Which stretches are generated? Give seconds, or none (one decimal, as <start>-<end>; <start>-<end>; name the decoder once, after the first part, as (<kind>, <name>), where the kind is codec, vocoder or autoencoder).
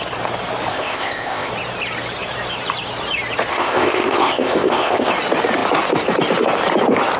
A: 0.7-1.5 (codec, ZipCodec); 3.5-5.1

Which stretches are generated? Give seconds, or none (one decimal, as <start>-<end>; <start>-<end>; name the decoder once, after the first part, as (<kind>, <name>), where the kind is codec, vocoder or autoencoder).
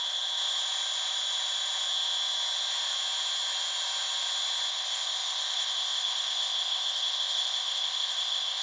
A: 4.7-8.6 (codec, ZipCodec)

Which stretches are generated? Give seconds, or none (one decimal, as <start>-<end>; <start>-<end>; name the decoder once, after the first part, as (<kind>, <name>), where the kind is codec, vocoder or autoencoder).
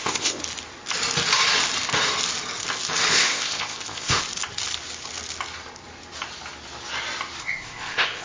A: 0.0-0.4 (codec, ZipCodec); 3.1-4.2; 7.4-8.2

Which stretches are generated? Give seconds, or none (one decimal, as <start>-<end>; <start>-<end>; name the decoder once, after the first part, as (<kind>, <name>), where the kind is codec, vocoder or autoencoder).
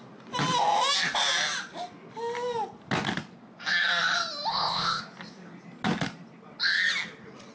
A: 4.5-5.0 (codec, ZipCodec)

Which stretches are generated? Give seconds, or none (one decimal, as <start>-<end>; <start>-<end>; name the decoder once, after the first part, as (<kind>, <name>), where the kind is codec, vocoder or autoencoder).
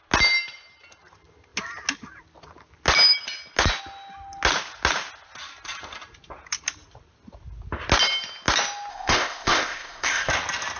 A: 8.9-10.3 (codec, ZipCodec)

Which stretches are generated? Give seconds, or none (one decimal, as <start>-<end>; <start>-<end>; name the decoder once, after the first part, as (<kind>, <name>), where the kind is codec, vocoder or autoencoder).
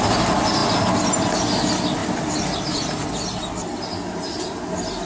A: none